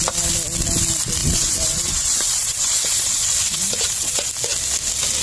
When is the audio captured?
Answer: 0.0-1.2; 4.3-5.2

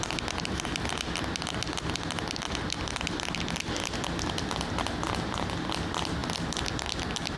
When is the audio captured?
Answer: 0.0-7.4

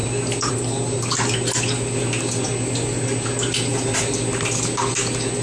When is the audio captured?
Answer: 0.0-5.4

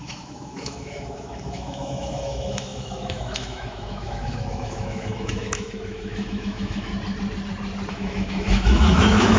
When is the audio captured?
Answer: 6.9-7.9

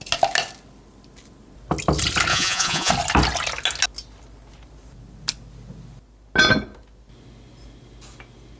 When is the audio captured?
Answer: 0.0-2.3; 2.9-8.6

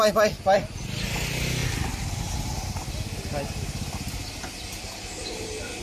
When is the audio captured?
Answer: 0.0-5.8